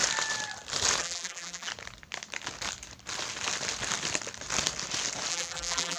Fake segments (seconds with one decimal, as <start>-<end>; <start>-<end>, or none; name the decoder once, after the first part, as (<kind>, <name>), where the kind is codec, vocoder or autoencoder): 1.0-1.7 (vocoder, BigVGAN v2); 5.3-6.0